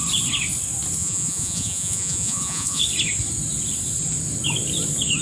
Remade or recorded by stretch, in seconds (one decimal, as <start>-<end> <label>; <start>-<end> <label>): 0.0-1.0 recorded; 1.0-2.8 remade; 2.8-5.2 recorded